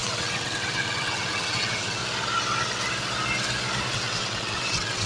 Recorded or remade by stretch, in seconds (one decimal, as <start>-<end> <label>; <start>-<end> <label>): 0.0-2.0 remade; 2.0-3.9 recorded; 3.9-5.1 remade